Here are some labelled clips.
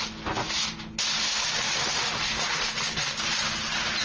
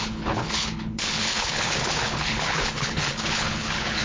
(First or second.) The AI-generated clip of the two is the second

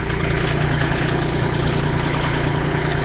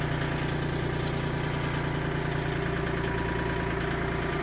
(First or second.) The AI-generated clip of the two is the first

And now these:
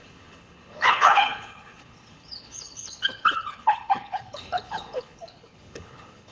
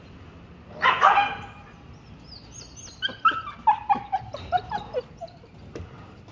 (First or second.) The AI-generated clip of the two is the first